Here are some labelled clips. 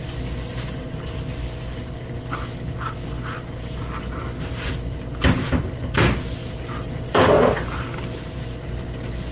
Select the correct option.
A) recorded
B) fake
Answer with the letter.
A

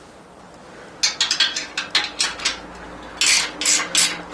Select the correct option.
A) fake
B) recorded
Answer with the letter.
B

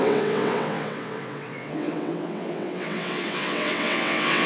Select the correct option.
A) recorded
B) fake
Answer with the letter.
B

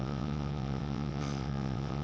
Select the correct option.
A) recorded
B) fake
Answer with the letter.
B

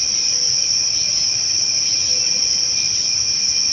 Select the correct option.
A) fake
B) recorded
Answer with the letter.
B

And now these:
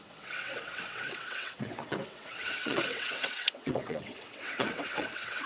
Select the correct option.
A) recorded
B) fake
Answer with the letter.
B